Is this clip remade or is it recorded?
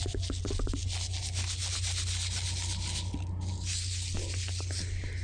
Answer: recorded